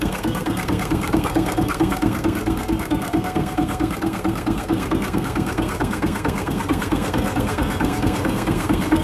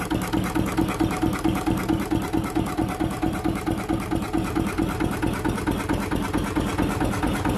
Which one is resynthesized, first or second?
first